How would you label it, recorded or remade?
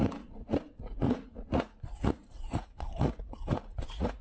remade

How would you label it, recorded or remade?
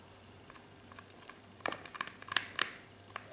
remade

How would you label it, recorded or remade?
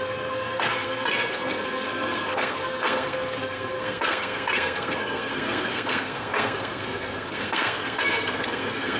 remade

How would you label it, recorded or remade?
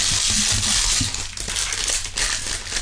recorded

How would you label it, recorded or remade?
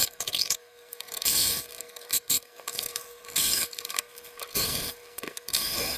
remade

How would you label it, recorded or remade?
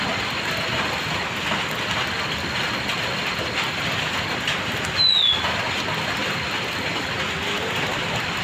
recorded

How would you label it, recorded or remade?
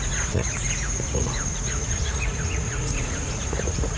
remade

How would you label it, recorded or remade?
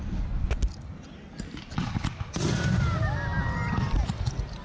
recorded